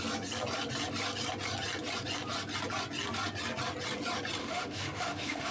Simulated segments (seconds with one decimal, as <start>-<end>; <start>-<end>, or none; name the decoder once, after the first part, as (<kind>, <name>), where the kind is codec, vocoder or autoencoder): 4.4-5.5 (autoencoder, DAC-VAE)